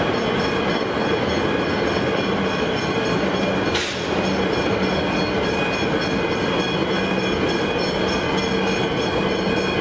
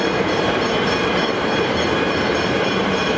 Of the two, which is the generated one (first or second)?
second